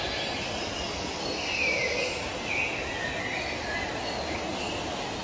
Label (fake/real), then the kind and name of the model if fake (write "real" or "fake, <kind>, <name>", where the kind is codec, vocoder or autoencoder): real